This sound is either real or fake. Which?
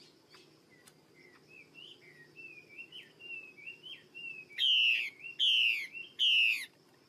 real